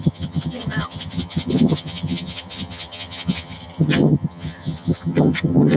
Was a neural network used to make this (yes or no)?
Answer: yes